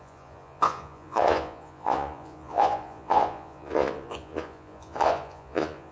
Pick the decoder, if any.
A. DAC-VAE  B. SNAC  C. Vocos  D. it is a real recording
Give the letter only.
C